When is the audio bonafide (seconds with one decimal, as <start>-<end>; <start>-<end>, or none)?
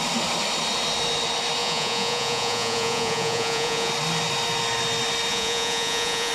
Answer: 0.0-1.6; 3.9-5.3